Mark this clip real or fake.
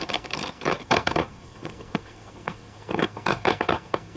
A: fake